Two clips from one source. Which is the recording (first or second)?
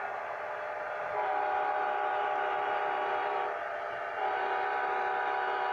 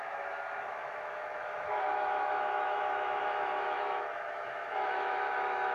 first